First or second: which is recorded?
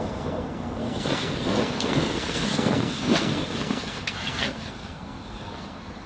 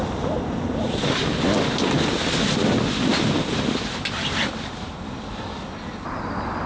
second